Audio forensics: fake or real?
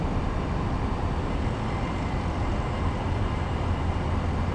real